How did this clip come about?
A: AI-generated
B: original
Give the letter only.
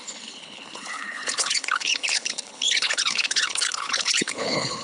A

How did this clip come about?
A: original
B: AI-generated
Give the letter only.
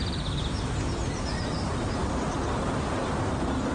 A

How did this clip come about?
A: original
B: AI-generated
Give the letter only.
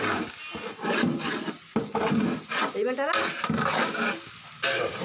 A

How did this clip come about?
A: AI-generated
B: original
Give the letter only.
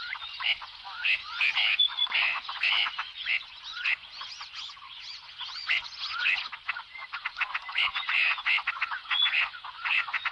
A